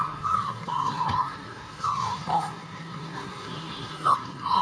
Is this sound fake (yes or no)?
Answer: yes